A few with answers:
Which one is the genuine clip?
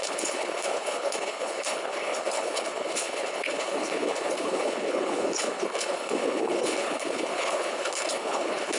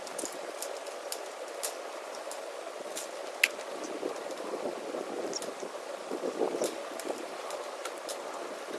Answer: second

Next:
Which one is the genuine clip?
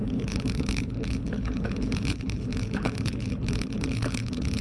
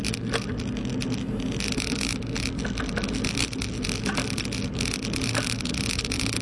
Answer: second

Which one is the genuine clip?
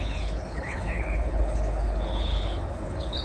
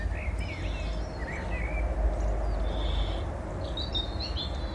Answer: second